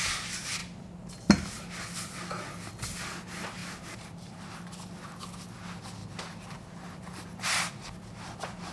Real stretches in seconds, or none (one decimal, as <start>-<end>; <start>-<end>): 0.0-3.6; 4.7-6.0; 7.7-8.7